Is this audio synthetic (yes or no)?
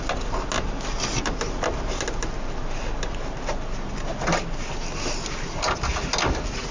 no